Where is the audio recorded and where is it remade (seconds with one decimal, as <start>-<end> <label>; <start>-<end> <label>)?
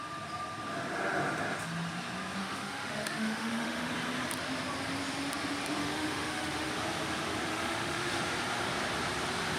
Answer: 0.0-2.4 recorded; 2.4-3.9 remade; 3.9-5.8 recorded; 5.8-6.7 remade; 6.7-7.5 recorded; 7.5-8.2 remade; 8.2-9.6 recorded